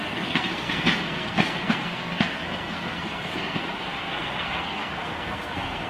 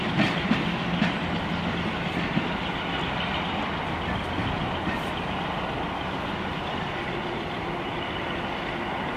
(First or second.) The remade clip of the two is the first